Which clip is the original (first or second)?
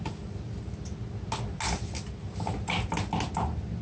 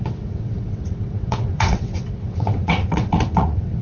first